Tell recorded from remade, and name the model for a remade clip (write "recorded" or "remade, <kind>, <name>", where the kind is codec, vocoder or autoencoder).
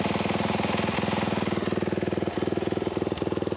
recorded